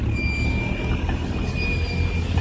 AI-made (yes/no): no